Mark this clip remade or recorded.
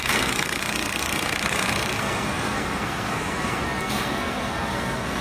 remade